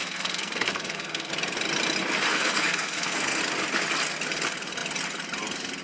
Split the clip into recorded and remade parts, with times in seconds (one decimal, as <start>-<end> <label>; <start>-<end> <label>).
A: 0.0-1.3 remade; 1.3-2.3 recorded; 2.3-3.4 remade; 3.4-5.8 recorded